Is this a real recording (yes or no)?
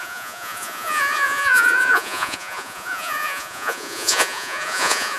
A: no